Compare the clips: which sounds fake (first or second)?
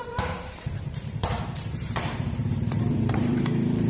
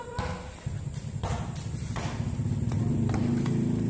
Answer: first